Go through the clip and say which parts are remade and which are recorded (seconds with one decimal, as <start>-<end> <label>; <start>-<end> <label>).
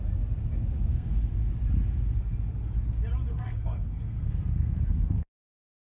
0.0-0.9 recorded; 0.9-1.5 remade; 1.5-3.3 recorded; 3.3-5.3 remade; 5.3-5.9 recorded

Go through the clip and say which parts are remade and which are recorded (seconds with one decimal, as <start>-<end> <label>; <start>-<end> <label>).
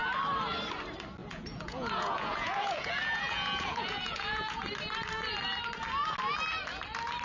0.0-1.2 recorded; 1.2-4.7 remade; 4.7-7.2 recorded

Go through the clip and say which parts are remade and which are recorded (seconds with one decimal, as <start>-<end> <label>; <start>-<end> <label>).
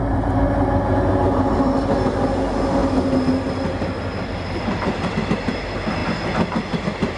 0.0-2.8 recorded; 2.8-5.3 remade; 5.3-7.2 recorded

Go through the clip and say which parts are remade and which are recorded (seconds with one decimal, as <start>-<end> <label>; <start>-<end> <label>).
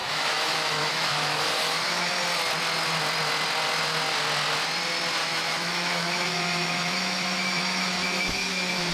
0.0-2.1 remade; 2.1-5.2 recorded; 5.2-8.9 remade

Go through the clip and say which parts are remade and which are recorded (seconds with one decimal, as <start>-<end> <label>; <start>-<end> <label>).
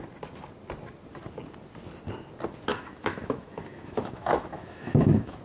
0.0-2.7 recorded; 2.7-5.4 remade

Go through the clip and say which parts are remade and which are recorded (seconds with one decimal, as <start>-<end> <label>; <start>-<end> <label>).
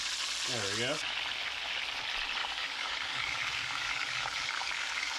0.0-2.4 recorded; 2.4-5.2 remade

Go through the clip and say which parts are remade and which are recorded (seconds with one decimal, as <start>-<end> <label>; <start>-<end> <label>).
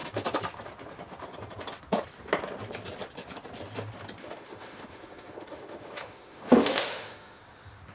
0.0-4.2 recorded; 4.2-7.4 remade; 7.4-7.9 recorded